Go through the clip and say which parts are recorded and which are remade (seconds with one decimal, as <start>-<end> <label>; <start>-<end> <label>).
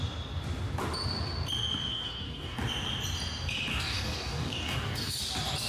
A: 0.0-1.9 recorded; 1.9-2.6 remade; 2.6-3.7 recorded; 3.7-5.2 remade; 5.2-5.7 recorded